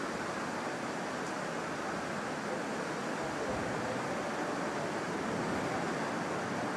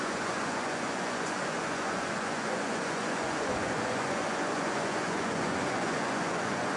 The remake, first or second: second